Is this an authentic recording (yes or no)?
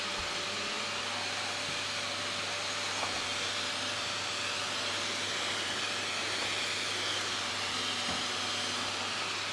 yes